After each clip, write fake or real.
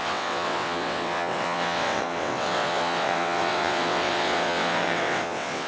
fake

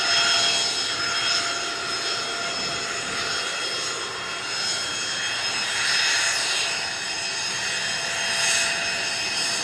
real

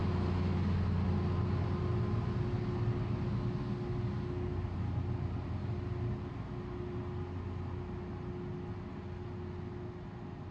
real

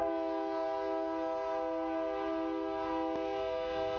real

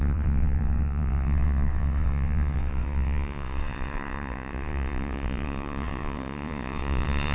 fake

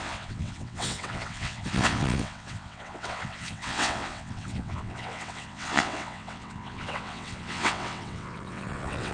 fake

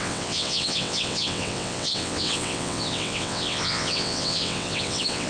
fake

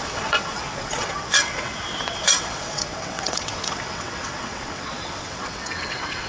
fake